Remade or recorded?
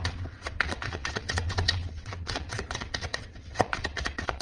remade